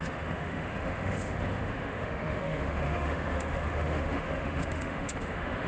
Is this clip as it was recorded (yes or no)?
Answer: no